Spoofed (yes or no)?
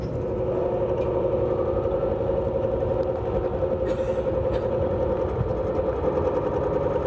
no